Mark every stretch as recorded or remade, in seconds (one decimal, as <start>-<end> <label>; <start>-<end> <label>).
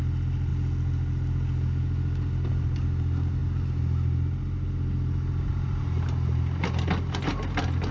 0.0-7.9 recorded